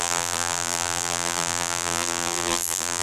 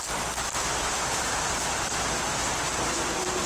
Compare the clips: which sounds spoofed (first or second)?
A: first